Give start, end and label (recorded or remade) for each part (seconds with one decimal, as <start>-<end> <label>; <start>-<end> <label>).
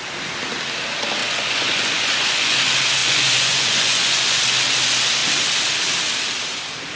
0.0-1.2 recorded; 1.2-2.6 remade; 2.6-3.0 recorded; 3.0-4.4 remade; 4.4-7.0 recorded